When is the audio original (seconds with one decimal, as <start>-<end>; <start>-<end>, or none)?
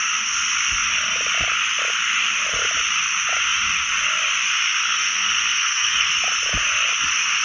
0.0-5.0; 6.1-7.4